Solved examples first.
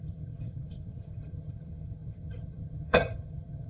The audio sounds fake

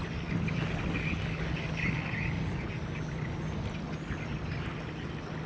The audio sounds real